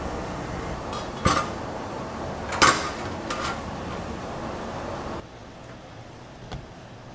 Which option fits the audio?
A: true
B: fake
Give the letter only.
A